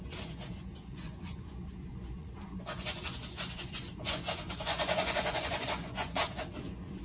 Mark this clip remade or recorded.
remade